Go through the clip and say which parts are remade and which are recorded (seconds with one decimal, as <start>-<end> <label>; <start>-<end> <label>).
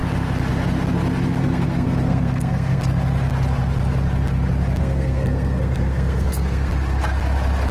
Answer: 0.0-1.4 recorded; 1.4-2.8 remade; 2.8-4.8 recorded; 4.8-6.7 remade; 6.7-7.7 recorded